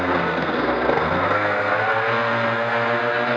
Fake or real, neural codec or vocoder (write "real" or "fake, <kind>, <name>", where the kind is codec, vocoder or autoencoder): fake, codec, SNAC